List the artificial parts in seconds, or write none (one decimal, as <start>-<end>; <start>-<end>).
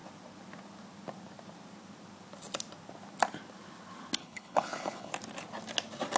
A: 4.2-5.1